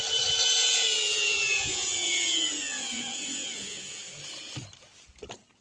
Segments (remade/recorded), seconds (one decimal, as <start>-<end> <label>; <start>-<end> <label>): 0.0-0.6 recorded; 0.6-4.0 remade; 4.0-5.6 recorded